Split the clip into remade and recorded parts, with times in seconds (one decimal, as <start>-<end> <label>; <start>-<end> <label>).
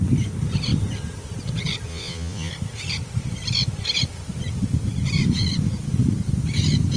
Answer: 0.0-1.9 recorded; 1.9-2.5 remade; 2.5-7.0 recorded